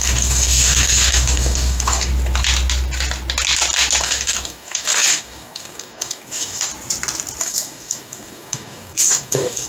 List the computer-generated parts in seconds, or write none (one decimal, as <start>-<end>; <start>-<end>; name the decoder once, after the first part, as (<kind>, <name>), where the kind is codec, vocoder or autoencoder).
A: 0.0-2.1 (codec, DAC); 4.0-6.7; 7.4-9.7